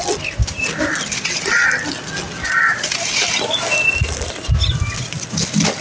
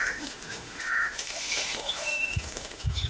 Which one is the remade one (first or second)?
second